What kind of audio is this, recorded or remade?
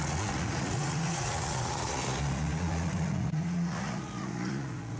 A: remade